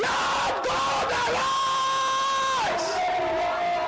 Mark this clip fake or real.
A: real